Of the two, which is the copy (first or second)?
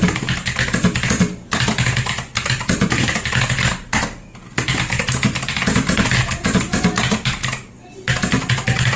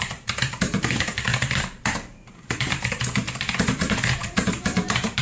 second